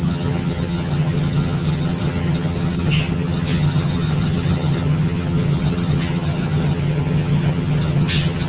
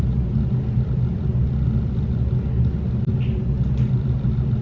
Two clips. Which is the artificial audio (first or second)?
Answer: first